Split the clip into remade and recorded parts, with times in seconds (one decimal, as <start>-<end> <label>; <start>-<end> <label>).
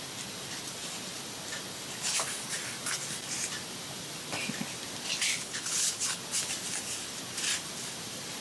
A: 0.0-5.3 recorded; 5.3-6.2 remade; 6.2-8.4 recorded